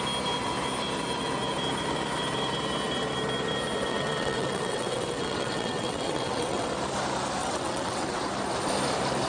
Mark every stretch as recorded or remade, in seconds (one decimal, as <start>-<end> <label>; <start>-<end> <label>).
0.0-3.9 recorded; 3.9-6.7 remade; 6.7-7.4 recorded; 7.4-8.2 remade; 8.2-9.3 recorded